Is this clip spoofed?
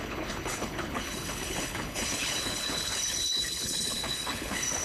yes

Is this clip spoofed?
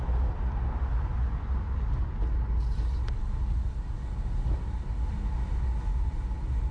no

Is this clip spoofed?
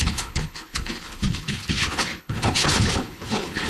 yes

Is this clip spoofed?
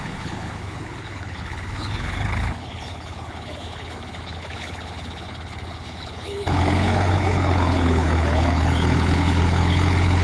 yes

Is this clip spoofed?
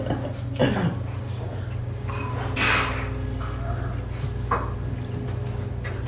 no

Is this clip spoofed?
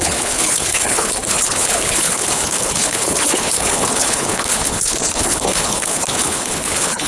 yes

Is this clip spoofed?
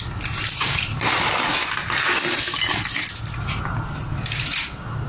no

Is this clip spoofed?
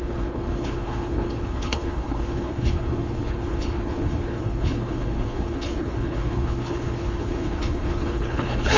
yes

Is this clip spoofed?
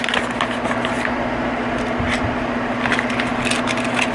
no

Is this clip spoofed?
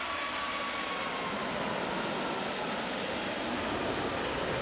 no